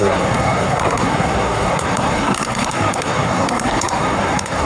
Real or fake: fake